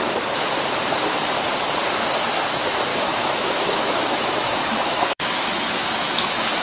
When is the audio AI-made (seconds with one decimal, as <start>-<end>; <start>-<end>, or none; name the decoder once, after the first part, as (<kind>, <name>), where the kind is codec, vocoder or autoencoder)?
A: 2.2-6.6 (autoencoder, DAC-VAE)